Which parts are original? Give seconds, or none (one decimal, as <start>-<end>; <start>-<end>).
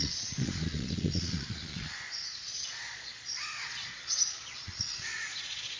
none